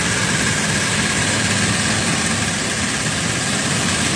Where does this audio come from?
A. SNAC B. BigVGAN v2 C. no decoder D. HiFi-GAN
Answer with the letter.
C